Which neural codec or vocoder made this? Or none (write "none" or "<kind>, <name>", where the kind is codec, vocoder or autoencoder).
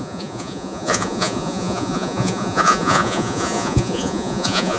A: vocoder, Vocos